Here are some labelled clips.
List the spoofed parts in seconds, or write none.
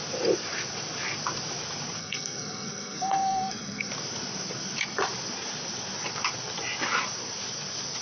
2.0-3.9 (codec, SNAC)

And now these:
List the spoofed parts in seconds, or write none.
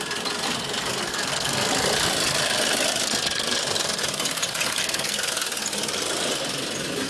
1.1-1.7 (codec, SNAC); 4.8-5.3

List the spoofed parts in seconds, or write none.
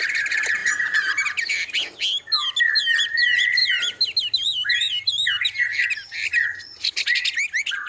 none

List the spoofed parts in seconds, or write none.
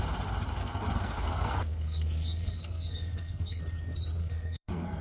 0.6-3.6 (codec, SNAC); 4.2-5.0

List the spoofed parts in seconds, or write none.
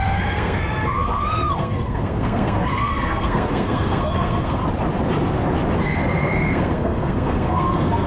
0.0-4.6 (codec, SNAC); 5.8-8.1